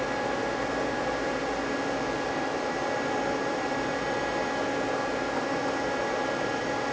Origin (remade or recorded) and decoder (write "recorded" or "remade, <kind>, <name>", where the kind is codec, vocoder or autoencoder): recorded